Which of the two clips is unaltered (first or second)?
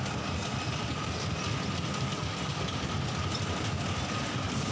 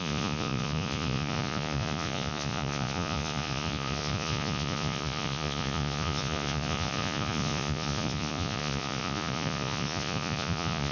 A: first